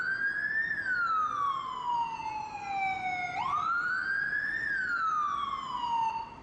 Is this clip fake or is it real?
real